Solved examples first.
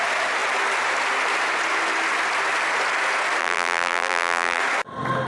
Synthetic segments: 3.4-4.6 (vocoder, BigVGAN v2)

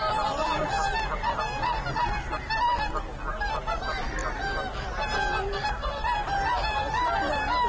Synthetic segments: none

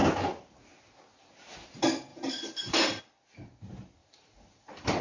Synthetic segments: 2.1-3.0 (vocoder, BigVGAN v2); 4.0-5.0